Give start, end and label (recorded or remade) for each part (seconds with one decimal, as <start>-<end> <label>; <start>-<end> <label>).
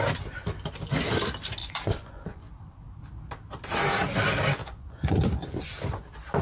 0.0-1.6 recorded; 1.6-2.5 remade; 2.5-4.6 recorded; 4.6-5.7 remade; 5.7-6.4 recorded